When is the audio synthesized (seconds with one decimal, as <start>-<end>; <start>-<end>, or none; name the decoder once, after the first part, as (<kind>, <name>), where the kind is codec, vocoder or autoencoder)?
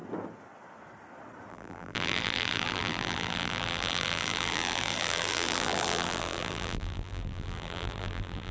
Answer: 1.5-8.5 (vocoder, BigVGAN v2)